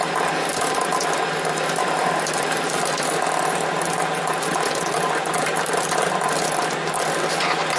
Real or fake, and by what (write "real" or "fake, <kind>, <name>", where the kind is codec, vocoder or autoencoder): real